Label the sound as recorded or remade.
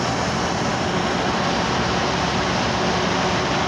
recorded